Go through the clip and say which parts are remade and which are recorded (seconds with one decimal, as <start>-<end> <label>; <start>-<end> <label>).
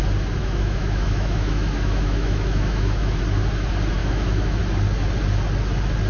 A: 0.0-0.4 recorded; 0.4-3.2 remade; 3.2-4.0 recorded; 4.0-4.6 remade; 4.6-6.1 recorded